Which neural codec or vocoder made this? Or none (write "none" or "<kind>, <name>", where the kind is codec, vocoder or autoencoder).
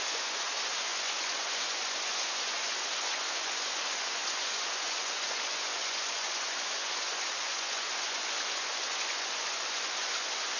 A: vocoder, Vocos